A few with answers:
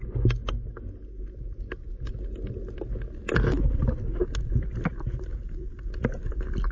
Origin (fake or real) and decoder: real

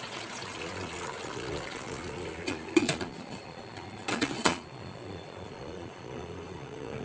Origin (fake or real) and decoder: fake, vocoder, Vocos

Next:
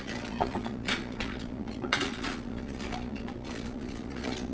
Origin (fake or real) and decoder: fake, vocoder, Vocos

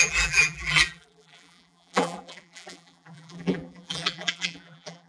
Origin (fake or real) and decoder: fake, vocoder, BigVGAN v2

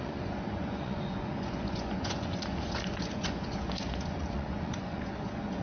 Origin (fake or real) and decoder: fake, vocoder, Vocos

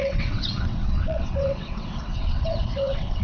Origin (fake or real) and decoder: fake, vocoder, WaveNeXt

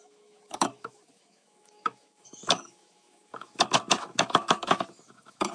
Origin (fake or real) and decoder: fake, autoencoder, DAC-VAE